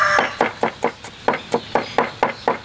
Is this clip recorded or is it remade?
recorded